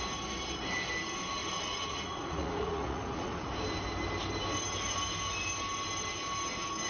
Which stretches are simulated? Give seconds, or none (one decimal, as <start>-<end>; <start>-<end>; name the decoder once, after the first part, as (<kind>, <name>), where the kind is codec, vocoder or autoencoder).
1.4-3.5 (vocoder, Vocos)